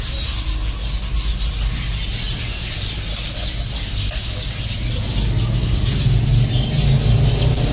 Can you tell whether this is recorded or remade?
recorded